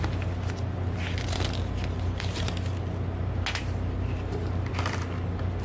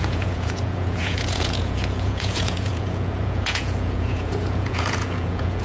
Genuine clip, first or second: first